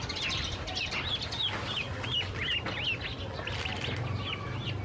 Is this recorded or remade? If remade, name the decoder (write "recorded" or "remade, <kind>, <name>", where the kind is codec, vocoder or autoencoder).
recorded